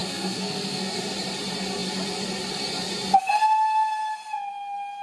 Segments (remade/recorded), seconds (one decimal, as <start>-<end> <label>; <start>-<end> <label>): 0.0-1.0 remade; 1.0-5.0 recorded